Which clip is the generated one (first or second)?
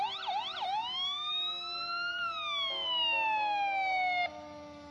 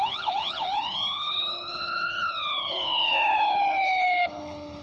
second